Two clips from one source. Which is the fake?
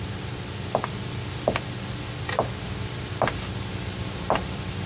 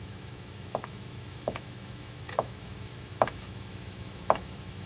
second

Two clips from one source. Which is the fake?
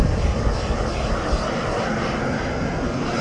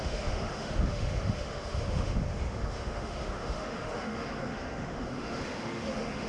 second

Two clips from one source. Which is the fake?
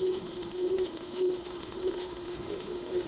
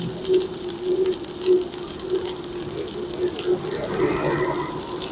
first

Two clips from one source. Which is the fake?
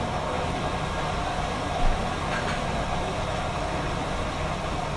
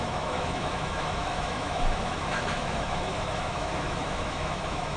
second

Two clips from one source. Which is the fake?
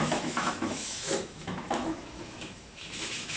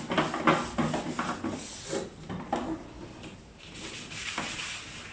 first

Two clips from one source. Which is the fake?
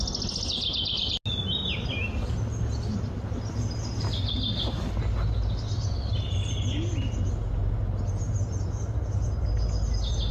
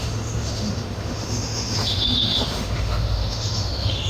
second